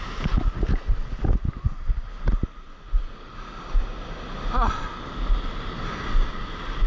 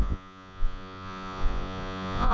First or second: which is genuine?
first